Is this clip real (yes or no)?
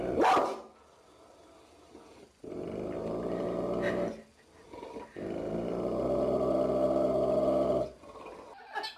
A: yes